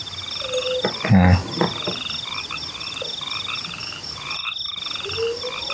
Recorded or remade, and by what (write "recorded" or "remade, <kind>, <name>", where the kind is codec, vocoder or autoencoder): recorded